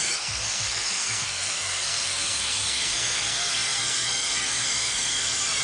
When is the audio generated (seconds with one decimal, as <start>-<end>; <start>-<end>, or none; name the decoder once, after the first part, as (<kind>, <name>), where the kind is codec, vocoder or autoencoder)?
0.0-5.6 (codec, SNAC)